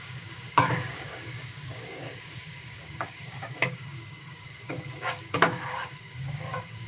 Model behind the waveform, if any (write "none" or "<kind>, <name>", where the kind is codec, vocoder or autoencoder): codec, DAC